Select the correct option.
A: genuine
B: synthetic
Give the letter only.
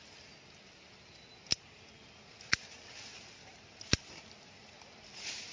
A